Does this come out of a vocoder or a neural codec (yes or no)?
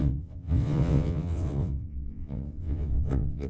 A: yes